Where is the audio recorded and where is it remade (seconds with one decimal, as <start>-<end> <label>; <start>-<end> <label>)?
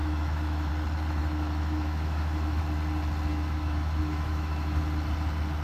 0.0-0.7 remade; 0.7-1.2 recorded; 1.2-2.6 remade; 2.6-3.3 recorded; 3.3-4.8 remade; 4.8-5.6 recorded